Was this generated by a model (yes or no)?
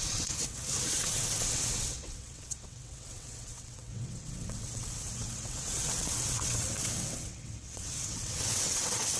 yes